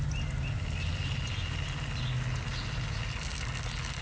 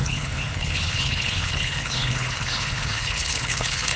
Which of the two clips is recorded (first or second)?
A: first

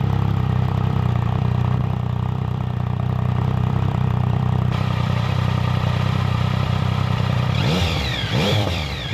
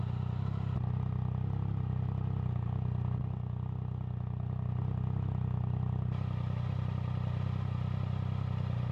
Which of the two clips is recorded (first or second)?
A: second